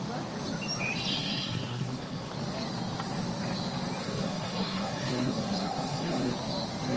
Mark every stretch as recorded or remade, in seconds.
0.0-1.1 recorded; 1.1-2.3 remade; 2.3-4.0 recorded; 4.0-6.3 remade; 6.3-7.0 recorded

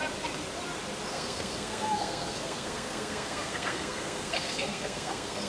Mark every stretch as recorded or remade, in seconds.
0.0-1.1 recorded; 1.1-5.5 remade

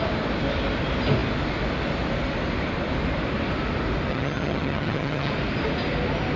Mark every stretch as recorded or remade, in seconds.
0.0-4.1 recorded; 4.1-5.3 remade; 5.3-6.4 recorded

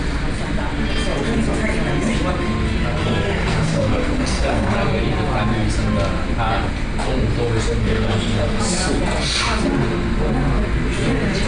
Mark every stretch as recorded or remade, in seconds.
0.0-3.0 recorded; 3.0-4.7 remade; 4.7-7.8 recorded; 7.8-8.6 remade; 8.6-11.5 recorded